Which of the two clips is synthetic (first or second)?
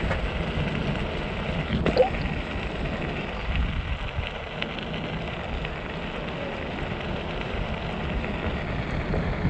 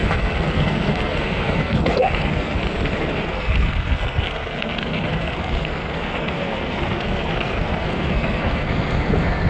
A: second